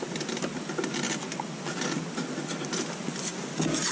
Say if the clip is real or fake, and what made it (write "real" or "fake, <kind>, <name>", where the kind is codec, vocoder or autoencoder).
real